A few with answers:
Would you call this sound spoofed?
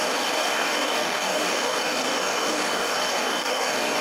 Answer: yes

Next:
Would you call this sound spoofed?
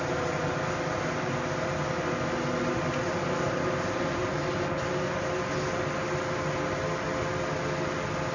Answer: no